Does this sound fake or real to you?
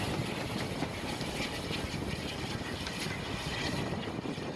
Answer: real